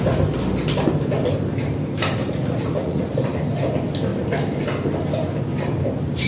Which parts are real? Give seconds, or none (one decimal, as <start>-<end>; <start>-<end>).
0.0-2.2; 3.1-6.3